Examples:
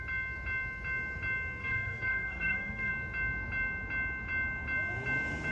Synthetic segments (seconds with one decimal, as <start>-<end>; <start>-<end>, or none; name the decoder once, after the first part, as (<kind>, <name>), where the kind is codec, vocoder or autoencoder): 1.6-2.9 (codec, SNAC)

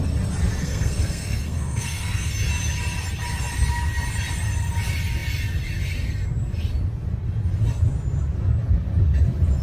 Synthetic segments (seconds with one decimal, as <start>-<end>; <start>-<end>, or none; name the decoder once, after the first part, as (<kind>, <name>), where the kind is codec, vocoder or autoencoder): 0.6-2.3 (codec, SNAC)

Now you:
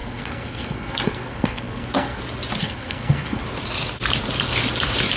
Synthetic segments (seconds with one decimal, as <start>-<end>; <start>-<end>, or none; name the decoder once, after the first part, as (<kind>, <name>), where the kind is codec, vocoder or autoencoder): 0.0-2.2 (codec, SNAC); 2.6-3.4